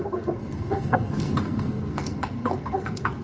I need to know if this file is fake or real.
fake